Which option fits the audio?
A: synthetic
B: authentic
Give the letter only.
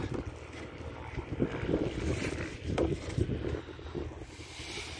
B